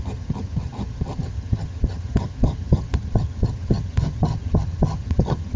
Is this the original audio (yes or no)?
no